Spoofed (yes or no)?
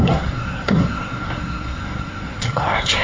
yes